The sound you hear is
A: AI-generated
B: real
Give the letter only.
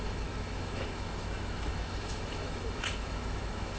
A